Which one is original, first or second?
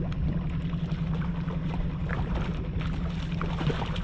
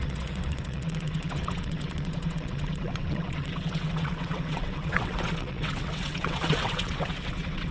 first